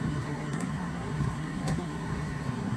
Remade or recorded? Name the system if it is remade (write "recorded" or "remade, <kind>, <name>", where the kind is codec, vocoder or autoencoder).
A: remade, codec, SNAC